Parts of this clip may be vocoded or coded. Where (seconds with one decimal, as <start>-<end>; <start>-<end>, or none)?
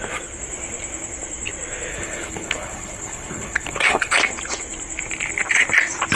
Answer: 1.9-4.1